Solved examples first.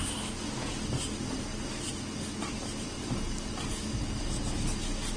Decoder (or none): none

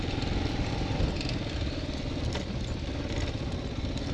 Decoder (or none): none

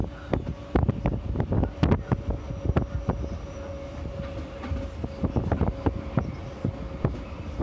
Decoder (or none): none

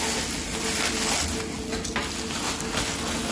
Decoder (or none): none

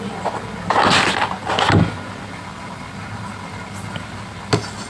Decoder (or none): none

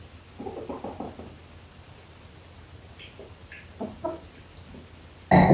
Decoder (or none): none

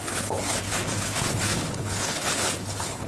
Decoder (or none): codec, HILCodec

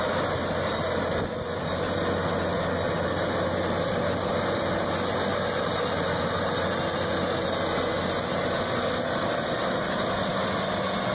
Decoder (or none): none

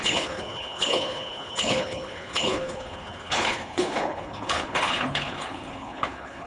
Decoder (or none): codec, HILCodec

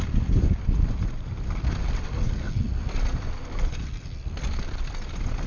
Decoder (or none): none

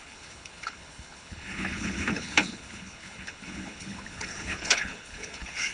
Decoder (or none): codec, HILCodec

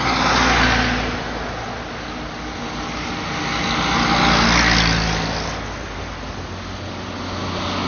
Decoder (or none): none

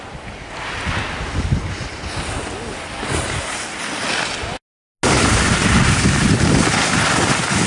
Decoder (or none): none